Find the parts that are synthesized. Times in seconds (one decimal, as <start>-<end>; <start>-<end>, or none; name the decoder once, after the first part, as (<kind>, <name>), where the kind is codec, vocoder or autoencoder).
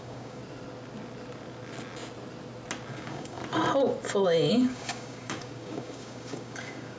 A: 0.0-0.4 (codec, DAC); 2.9-3.4; 4.5-7.0